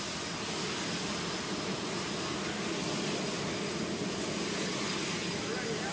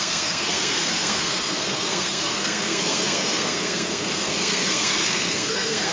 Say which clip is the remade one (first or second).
second